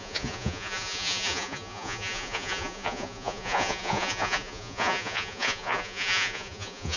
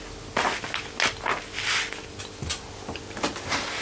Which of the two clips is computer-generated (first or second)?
first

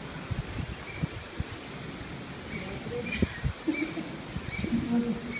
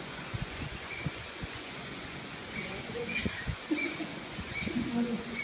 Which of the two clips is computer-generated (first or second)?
second